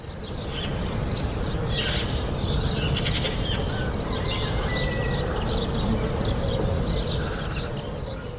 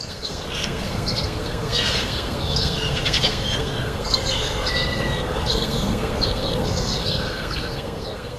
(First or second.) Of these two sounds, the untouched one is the first